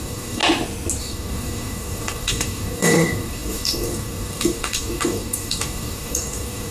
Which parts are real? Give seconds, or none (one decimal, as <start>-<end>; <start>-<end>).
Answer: 0.4-1.0